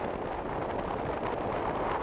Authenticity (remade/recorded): recorded